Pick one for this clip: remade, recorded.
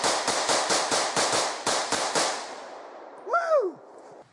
recorded